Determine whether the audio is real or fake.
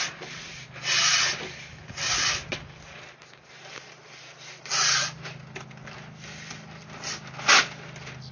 real